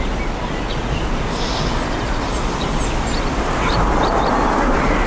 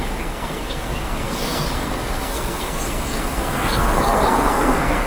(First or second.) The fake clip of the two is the second